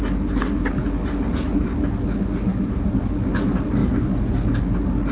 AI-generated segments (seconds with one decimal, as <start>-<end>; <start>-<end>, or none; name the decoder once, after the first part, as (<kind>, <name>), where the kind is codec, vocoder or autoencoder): 2.5-3.0 (vocoder, BigVGAN v2); 3.8-4.3